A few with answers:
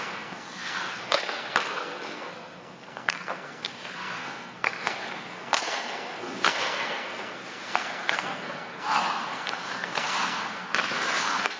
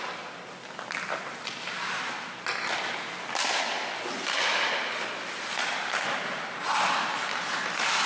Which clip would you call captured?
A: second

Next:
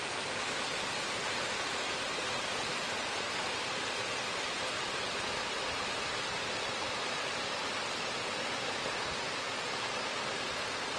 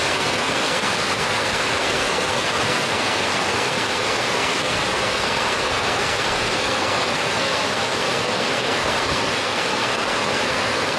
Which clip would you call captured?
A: first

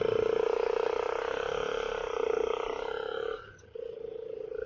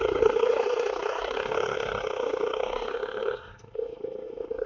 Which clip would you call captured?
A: first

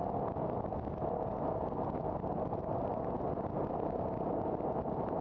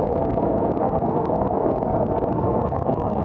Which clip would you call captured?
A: first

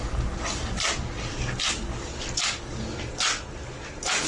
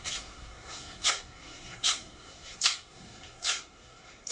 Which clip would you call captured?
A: first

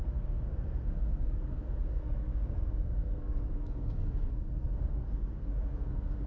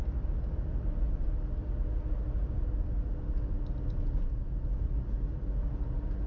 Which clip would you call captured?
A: second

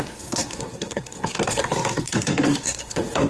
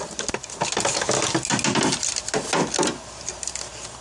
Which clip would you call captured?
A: second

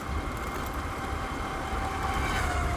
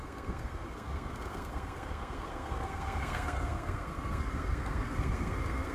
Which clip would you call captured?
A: first